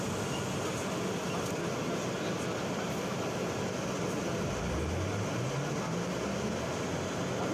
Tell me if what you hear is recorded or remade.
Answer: recorded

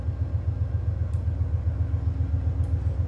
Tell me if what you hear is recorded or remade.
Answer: recorded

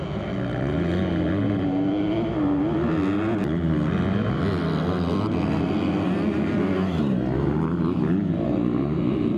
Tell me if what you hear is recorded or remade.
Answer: recorded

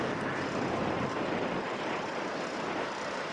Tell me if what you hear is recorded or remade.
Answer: recorded